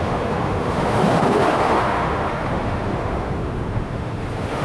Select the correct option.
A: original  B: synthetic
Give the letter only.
B